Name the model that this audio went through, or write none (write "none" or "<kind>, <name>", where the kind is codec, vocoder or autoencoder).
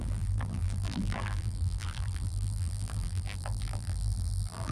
vocoder, BigVGAN v2